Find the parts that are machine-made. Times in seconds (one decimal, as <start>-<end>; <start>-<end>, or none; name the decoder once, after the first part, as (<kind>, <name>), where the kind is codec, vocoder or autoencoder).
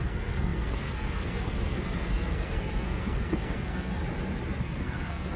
0.0-4.0 (codec, SNAC); 4.6-5.4